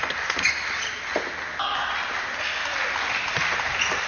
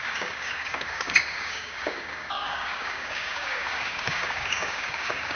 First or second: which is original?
first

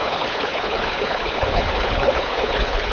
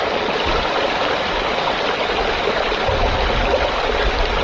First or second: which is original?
second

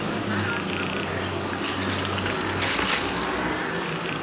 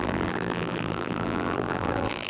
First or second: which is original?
first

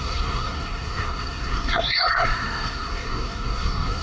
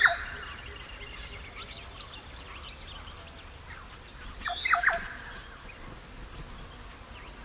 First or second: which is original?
second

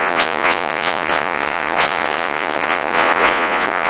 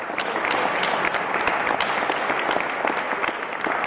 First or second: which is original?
second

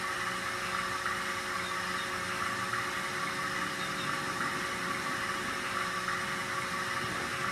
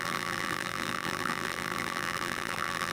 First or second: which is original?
first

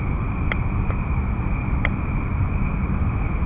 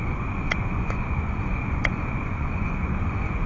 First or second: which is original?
first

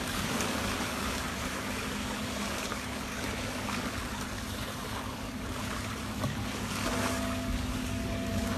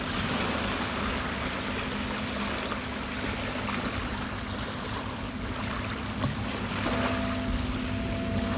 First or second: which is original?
second